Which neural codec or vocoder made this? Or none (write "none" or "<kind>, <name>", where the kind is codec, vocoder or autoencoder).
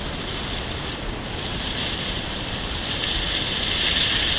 none